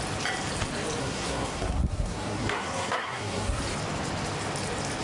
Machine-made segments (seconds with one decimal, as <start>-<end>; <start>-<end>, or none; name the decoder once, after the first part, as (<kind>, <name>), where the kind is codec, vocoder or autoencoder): 1.0-3.6 (codec, SNAC)